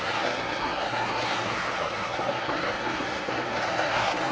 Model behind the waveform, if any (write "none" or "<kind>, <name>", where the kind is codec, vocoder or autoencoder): codec, SNAC